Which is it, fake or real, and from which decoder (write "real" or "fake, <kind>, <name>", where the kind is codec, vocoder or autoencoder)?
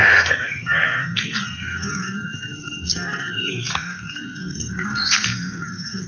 fake, codec, SNAC